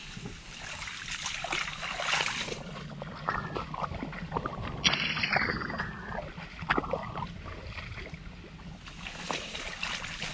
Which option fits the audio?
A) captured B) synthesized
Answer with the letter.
A